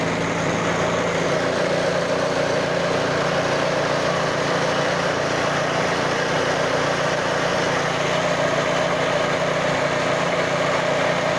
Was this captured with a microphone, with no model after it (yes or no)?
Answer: yes